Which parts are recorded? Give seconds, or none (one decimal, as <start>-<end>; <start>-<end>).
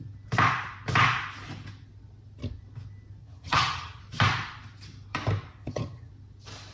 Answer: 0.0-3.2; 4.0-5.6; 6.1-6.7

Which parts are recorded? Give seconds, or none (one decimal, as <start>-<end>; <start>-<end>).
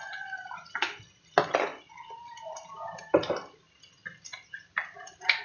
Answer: 0.0-5.4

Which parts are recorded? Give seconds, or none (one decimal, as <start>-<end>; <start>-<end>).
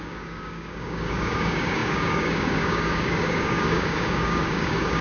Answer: none